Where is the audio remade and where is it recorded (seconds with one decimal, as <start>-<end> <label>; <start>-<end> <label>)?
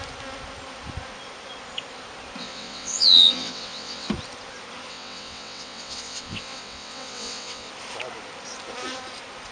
0.0-2.4 recorded; 2.4-4.1 remade; 4.1-4.9 recorded; 4.9-7.7 remade; 7.7-9.5 recorded